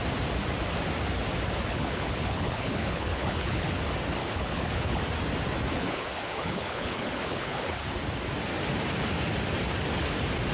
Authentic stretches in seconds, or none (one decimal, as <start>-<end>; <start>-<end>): 0.0-1.7; 3.8-4.2; 5.0-5.7; 7.8-10.5